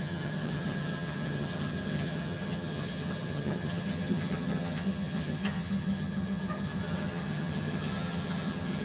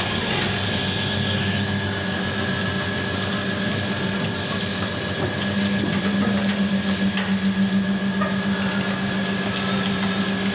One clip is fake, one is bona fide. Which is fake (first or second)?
first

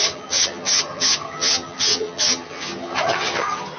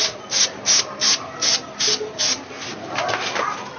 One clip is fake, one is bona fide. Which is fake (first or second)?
first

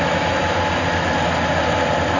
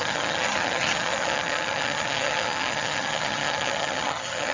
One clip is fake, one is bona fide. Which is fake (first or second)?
second